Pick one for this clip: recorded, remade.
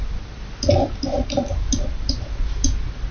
remade